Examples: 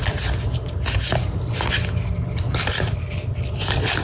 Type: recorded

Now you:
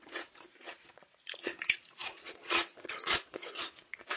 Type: remade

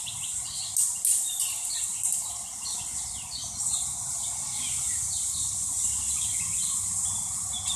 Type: recorded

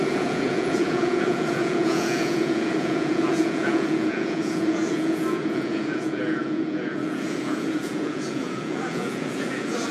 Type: remade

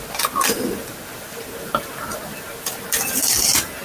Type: recorded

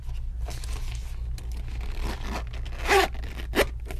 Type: recorded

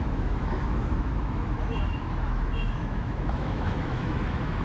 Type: remade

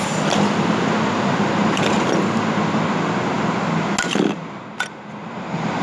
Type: recorded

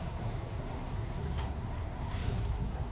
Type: remade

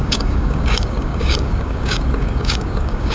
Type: remade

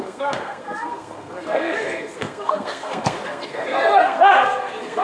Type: remade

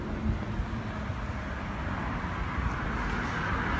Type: recorded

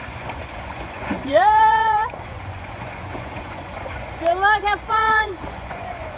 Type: remade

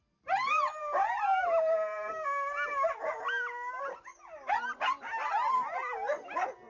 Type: recorded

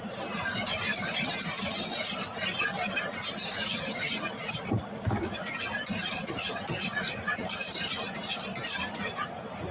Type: remade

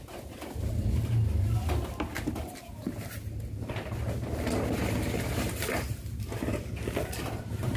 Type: recorded